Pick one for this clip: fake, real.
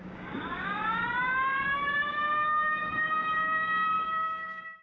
fake